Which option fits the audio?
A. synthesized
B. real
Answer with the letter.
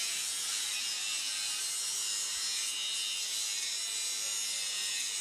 B